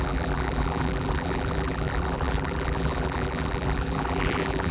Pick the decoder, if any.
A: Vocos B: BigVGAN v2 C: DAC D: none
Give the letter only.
B